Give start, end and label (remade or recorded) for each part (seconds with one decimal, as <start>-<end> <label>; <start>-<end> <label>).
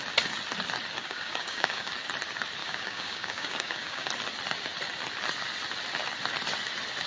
0.0-1.0 recorded; 1.0-1.9 remade; 1.9-2.6 recorded; 2.6-4.1 remade; 4.1-7.1 recorded